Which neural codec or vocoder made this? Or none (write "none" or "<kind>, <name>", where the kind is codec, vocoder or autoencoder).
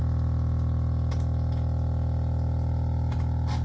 none